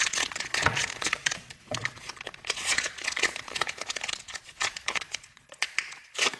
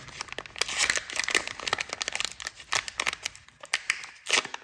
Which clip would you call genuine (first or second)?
second